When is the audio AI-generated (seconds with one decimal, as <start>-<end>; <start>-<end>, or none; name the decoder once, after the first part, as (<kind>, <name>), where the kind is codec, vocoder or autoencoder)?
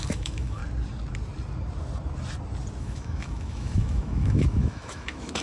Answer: 0.0-0.6 (autoencoder, DAC-VAE); 2.8-5.4